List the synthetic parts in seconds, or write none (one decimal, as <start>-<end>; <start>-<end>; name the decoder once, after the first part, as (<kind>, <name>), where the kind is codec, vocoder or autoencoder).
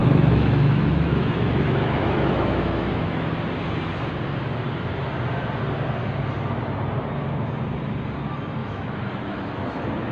0.0-3.3 (autoencoder, DAC-VAE); 8.6-9.6